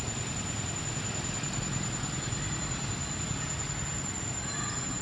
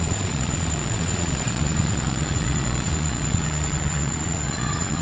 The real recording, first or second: first